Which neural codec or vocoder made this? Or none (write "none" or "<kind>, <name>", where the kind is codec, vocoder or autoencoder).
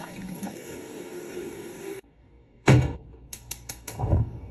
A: codec, DAC